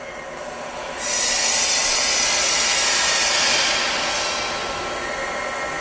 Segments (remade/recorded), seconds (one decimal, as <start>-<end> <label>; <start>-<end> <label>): 0.0-5.8 recorded